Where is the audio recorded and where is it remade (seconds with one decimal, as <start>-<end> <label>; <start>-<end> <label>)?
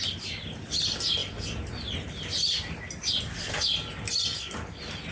0.0-5.1 recorded